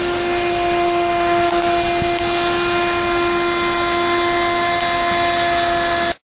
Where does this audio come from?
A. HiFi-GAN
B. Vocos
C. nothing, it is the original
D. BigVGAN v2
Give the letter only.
C